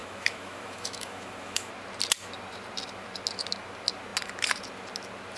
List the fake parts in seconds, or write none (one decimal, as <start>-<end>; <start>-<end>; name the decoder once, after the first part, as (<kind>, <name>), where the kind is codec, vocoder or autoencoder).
0.0-1.7 (autoencoder, DAC-VAE)